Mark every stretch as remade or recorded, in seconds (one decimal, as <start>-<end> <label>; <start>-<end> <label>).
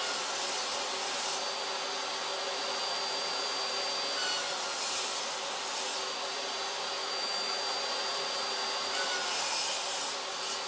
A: 0.0-7.0 recorded; 7.0-7.6 remade; 7.6-10.7 recorded